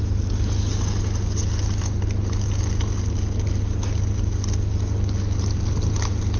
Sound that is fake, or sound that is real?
real